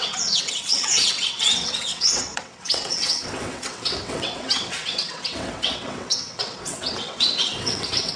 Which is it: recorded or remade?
remade